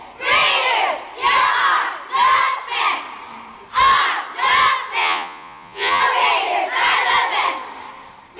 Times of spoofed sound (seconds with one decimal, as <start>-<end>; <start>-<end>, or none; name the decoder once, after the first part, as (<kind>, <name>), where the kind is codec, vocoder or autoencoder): 5.0-6.0 (vocoder, Vocos)